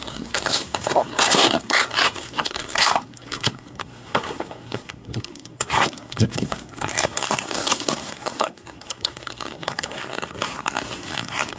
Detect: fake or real fake